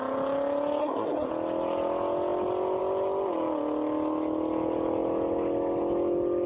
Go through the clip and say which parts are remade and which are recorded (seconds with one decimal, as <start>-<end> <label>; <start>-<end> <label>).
0.0-0.8 recorded; 0.8-1.3 remade; 1.3-6.5 recorded